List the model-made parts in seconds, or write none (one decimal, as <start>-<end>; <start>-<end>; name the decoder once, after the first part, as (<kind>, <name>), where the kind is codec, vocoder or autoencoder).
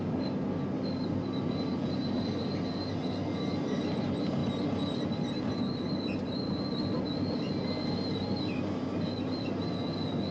none